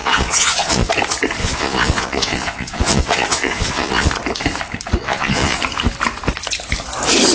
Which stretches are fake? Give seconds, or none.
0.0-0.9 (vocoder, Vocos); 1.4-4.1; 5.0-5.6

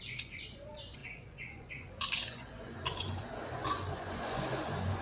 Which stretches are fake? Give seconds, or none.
0.0-5.0 (vocoder, Vocos)

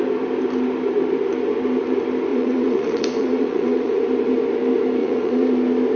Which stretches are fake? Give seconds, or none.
2.3-4.0 (vocoder, Vocos); 5.0-5.5

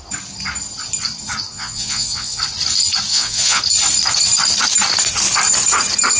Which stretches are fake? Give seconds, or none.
1.5-2.4 (vocoder, Vocos); 3.1-3.6

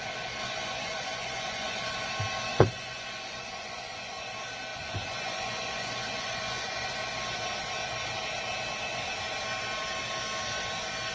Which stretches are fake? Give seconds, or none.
0.4-2.1 (vocoder, Vocos); 2.5-4.3; 4.7-7.1

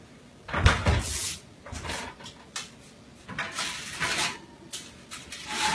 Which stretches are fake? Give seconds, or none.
none